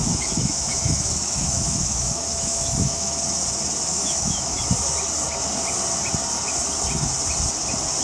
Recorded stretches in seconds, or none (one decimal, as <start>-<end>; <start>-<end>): 3.2-3.9; 4.6-8.0